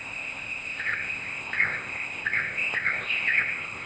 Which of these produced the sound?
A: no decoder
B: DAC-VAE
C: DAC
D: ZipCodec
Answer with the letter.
D